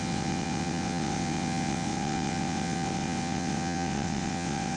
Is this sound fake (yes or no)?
yes